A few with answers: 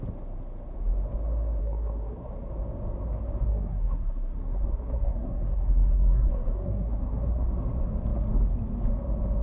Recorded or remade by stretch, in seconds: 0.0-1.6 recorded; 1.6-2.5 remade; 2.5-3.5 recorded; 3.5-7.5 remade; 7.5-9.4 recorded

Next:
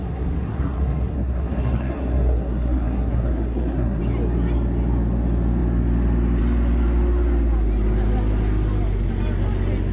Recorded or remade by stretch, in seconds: 0.0-4.0 remade; 4.0-9.9 recorded

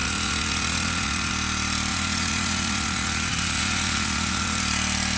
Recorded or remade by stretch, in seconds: 0.0-1.3 remade; 1.3-1.9 recorded; 1.9-4.6 remade; 4.6-5.2 recorded